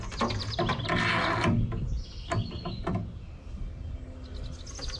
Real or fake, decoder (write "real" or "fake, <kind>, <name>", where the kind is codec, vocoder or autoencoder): real